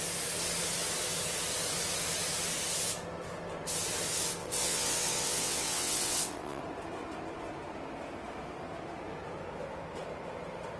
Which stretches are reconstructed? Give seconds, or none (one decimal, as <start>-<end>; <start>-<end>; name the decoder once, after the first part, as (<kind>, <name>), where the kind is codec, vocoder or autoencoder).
4.4-6.6 (vocoder, WaveNeXt)